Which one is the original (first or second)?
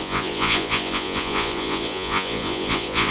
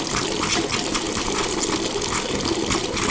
second